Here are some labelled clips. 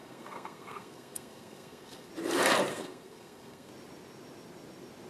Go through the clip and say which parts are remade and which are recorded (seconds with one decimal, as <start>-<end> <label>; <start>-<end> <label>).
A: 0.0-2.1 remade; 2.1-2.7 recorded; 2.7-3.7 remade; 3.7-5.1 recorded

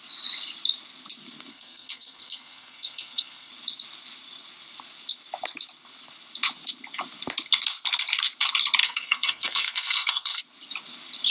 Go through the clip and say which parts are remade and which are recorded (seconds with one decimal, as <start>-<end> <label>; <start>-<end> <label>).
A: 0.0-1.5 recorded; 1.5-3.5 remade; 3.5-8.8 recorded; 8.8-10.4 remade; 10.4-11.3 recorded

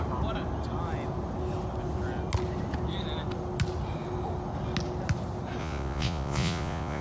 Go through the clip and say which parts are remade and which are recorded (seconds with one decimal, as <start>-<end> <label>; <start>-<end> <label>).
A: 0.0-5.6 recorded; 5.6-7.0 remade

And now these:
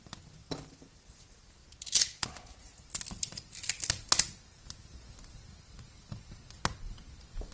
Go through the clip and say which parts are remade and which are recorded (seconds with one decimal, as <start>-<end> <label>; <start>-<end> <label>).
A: 0.0-7.5 recorded

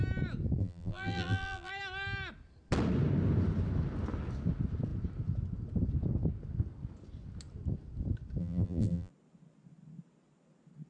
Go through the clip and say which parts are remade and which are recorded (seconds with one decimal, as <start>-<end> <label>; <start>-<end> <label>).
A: 0.0-0.6 recorded; 0.6-1.7 remade; 1.7-8.4 recorded; 8.4-9.1 remade; 9.1-10.9 recorded

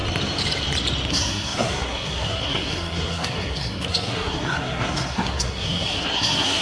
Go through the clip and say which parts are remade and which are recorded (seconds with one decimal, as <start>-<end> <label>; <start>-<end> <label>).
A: 0.0-1.1 recorded; 1.1-6.6 remade